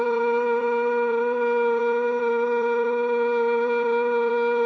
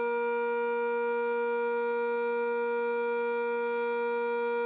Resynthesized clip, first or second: first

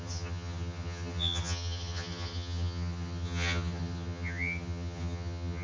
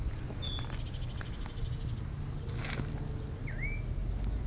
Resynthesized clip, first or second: first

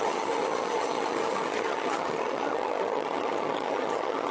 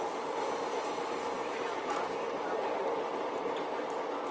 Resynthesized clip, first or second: first